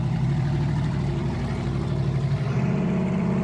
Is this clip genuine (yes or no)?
no